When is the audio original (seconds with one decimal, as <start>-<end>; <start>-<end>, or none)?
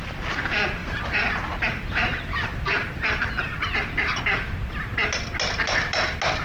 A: 0.0-0.8; 4.6-6.4